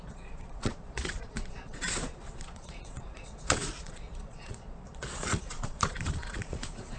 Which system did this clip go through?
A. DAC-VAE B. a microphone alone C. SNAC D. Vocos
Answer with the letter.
D